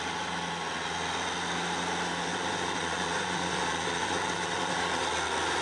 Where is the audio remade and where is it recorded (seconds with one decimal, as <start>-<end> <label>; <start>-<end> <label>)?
0.0-2.3 recorded; 2.3-5.0 remade; 5.0-5.6 recorded